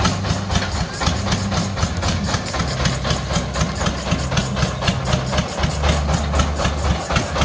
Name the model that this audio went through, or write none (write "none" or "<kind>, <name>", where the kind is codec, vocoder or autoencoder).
none